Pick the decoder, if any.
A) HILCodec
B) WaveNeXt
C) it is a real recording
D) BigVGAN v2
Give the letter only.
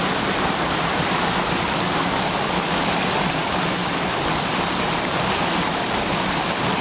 C